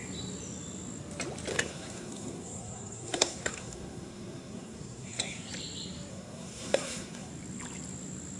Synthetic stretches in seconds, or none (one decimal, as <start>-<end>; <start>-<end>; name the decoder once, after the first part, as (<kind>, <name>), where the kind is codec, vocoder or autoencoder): 1.5-5.5 (codec, SNAC); 6.1-7.3